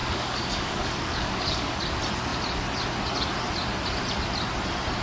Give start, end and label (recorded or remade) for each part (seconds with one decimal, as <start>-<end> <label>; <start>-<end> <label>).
0.0-1.8 remade; 1.8-5.0 recorded

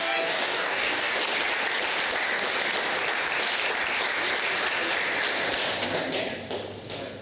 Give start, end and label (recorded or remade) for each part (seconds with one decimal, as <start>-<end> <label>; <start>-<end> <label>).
0.0-1.1 remade; 1.1-7.2 recorded